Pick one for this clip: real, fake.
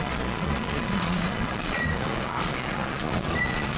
fake